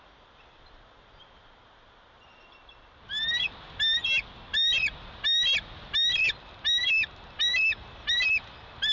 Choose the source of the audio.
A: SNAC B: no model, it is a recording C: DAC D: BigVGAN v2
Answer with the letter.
B